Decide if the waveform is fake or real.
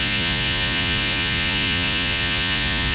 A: fake